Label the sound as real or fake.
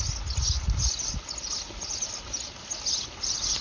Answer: real